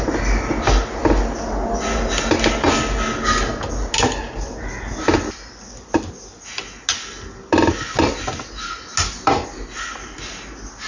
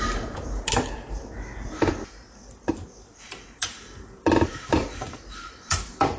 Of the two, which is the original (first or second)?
first